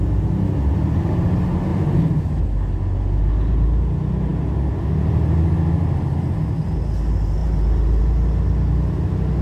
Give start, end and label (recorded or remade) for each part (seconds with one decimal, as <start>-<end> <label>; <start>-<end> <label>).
0.0-1.7 recorded; 1.7-2.4 remade; 2.4-9.4 recorded